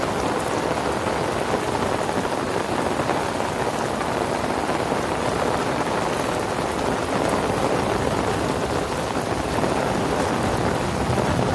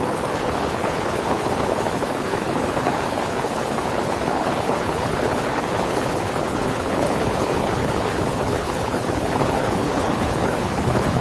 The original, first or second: first